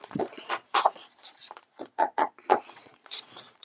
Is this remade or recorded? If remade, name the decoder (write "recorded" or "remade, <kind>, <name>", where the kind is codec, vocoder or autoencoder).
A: remade, vocoder, Vocos